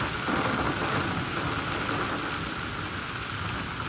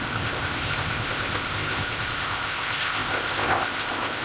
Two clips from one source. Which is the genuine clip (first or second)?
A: first